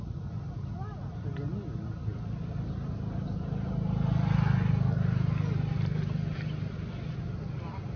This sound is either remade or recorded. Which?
recorded